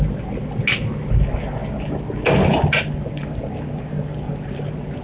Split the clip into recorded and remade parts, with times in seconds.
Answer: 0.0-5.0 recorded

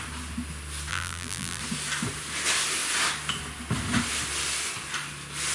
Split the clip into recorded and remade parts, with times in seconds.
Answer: 0.0-0.9 recorded; 0.9-1.6 remade; 1.6-5.5 recorded

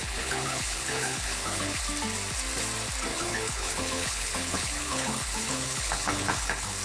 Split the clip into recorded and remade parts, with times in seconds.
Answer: 0.0-1.8 remade; 1.8-3.1 recorded; 3.1-6.8 remade

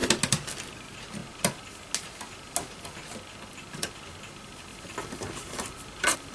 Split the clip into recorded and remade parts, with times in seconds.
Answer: 0.0-4.7 recorded; 4.7-5.7 remade; 5.7-6.3 recorded

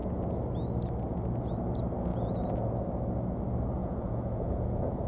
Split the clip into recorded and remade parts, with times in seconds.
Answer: 0.0-2.1 recorded; 2.1-2.7 remade; 2.7-3.8 recorded; 3.8-5.1 remade

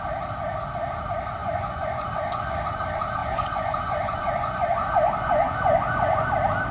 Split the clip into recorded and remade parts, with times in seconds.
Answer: 0.0-1.4 recorded; 1.4-2.6 remade; 2.6-3.2 recorded; 3.2-6.3 remade; 6.3-6.7 recorded

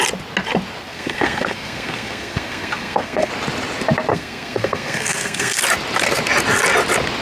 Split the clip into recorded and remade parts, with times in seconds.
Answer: 0.0-0.8 recorded; 0.8-3.3 remade; 3.3-4.1 recorded; 4.1-5.6 remade; 5.6-7.2 recorded